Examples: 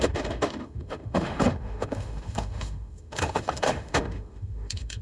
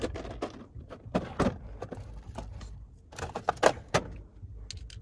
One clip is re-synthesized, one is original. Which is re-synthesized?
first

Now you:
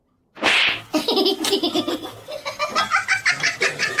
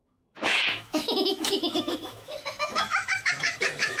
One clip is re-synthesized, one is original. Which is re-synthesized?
second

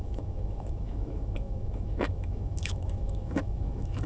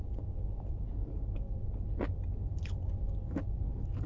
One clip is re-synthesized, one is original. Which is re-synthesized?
first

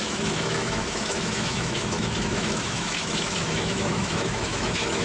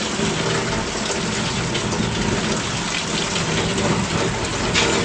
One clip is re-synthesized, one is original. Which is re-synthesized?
first